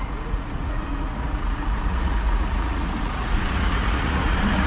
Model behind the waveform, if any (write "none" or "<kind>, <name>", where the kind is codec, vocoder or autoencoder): vocoder, Vocos